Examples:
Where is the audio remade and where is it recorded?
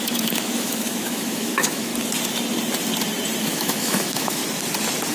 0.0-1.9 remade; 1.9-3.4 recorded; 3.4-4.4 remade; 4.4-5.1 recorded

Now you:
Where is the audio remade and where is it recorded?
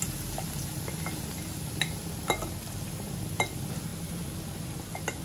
0.0-5.2 recorded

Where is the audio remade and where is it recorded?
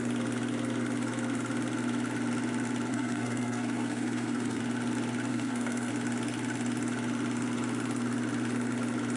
0.0-2.9 recorded; 2.9-4.6 remade; 4.6-5.3 recorded; 5.3-5.9 remade; 5.9-9.2 recorded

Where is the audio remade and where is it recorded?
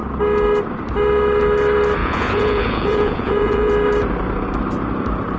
0.0-2.0 recorded; 2.0-3.7 remade; 3.7-5.4 recorded